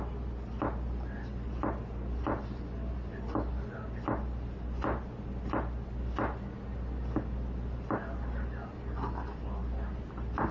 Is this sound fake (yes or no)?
no